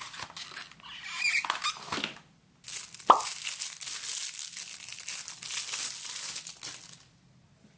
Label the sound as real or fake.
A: real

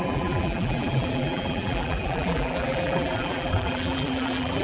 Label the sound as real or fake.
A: fake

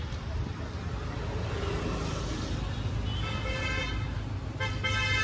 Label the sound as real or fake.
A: real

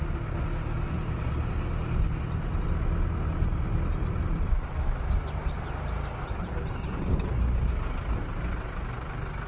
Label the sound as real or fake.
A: real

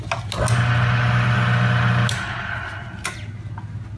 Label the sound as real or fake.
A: real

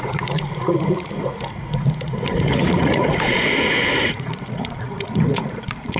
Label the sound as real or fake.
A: fake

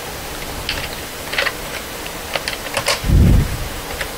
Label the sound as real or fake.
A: real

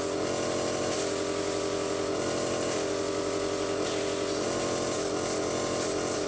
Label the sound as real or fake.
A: real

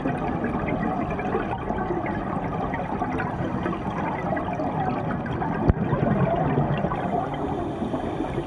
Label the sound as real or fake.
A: real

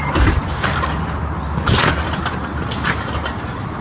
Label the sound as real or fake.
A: real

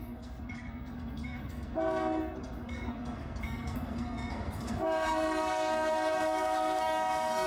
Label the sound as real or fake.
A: fake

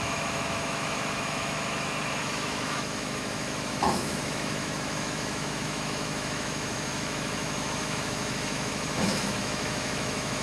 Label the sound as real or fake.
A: fake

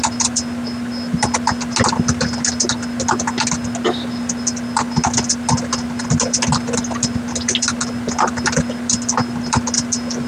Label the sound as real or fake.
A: real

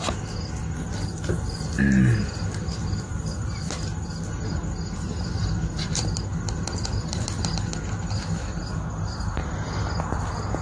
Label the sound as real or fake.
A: real